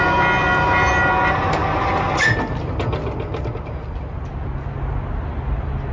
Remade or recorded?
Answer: recorded